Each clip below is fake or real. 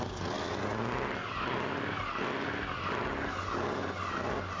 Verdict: real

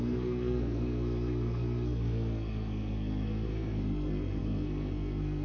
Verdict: fake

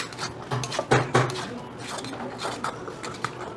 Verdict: real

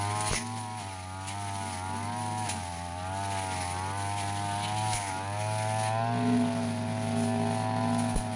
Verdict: real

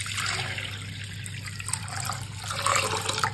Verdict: real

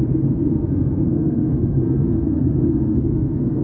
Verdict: fake